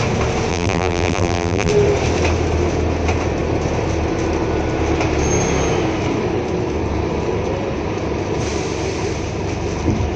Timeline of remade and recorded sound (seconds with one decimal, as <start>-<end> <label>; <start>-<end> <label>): 0.0-0.5 recorded; 0.5-1.7 remade; 1.7-10.2 recorded